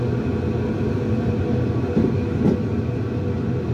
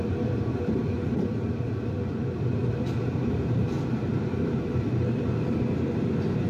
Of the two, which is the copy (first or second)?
second